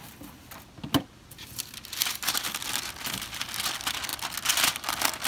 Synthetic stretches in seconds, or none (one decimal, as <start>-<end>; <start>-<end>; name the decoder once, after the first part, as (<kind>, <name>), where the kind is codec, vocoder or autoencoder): none